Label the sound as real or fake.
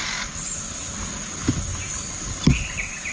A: real